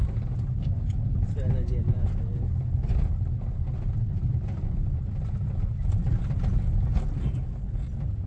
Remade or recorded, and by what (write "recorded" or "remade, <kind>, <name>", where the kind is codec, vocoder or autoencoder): recorded